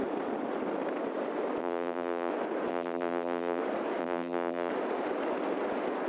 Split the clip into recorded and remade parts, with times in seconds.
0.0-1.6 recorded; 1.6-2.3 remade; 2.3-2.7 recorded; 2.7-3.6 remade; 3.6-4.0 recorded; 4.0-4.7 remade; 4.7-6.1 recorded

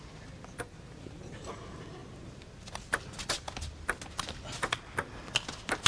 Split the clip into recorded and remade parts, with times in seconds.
0.0-5.9 recorded

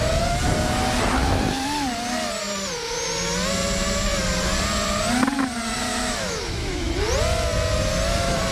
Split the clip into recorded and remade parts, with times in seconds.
0.0-5.9 recorded; 5.9-6.9 remade; 6.9-8.5 recorded